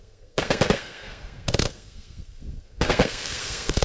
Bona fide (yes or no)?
no